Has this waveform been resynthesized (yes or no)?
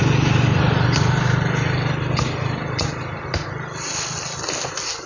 no